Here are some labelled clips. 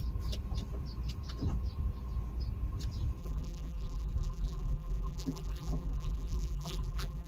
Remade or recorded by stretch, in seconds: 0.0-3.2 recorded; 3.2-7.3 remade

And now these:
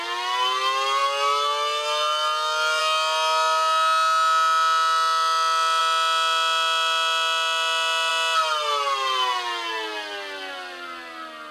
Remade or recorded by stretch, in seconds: 0.0-11.5 recorded

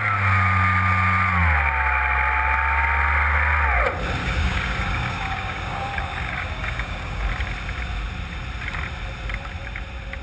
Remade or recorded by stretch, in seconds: 0.0-4.2 recorded; 4.2-7.2 remade; 7.2-10.2 recorded

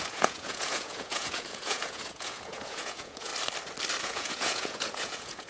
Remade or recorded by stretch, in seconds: 0.0-3.3 remade; 3.3-4.0 recorded; 4.0-5.5 remade